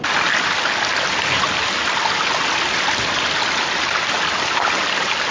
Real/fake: real